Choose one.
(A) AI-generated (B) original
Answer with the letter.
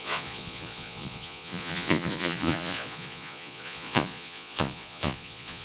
A